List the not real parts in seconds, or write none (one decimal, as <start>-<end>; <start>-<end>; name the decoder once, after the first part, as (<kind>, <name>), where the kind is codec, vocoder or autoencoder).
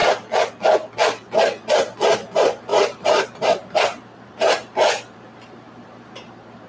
2.7-6.3 (vocoder, BigVGAN v2)